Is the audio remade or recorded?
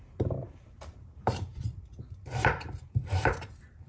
remade